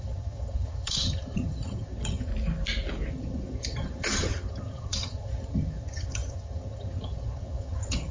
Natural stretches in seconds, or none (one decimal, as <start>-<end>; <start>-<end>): 2.3-3.1